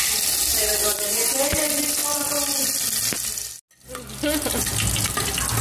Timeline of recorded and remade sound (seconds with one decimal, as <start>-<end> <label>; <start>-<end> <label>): 0.0-0.5 recorded; 0.5-1.3 remade; 1.3-5.6 recorded